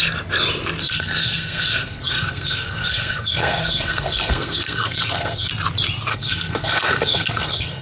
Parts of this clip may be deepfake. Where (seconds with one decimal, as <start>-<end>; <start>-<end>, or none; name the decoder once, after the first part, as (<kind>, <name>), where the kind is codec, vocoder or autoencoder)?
0.8-5.5 (codec, SNAC); 6.1-7.8